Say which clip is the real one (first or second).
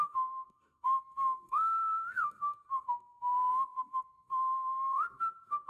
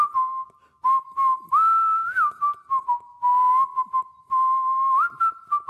second